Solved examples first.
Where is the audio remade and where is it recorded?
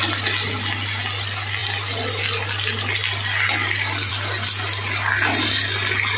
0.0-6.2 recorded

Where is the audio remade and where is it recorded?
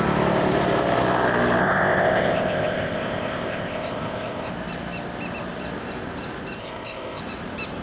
0.0-1.6 recorded; 1.6-4.5 remade; 4.5-6.6 recorded; 6.6-7.2 remade; 7.2-7.8 recorded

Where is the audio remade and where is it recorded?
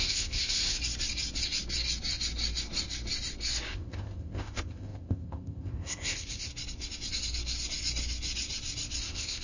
0.0-0.8 remade; 0.8-3.7 recorded; 3.7-6.5 remade; 6.5-9.0 recorded; 9.0-9.4 remade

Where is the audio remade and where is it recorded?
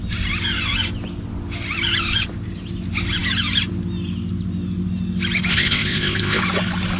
0.0-5.5 recorded; 5.5-6.4 remade; 6.4-7.0 recorded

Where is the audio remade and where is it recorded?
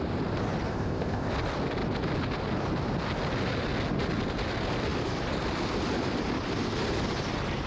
0.0-0.7 recorded; 0.7-1.3 remade; 1.3-7.7 recorded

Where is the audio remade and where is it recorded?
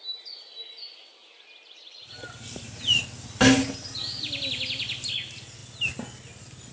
0.0-6.7 recorded